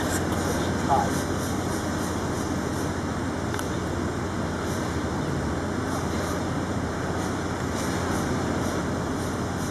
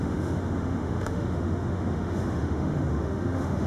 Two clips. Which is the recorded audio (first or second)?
first